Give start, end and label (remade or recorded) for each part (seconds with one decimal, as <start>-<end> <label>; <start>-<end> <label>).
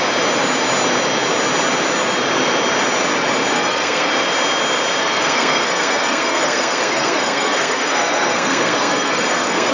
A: 0.0-3.5 recorded; 3.5-4.1 remade; 4.1-5.0 recorded; 5.0-9.7 remade